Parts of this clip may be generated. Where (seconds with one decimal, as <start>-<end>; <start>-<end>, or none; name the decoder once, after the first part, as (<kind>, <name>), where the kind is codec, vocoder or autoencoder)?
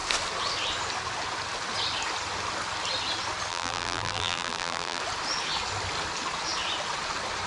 3.5-5.0 (vocoder, BigVGAN v2)